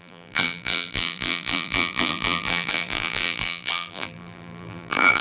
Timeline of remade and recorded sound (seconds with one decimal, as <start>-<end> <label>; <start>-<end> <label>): 0.0-5.2 remade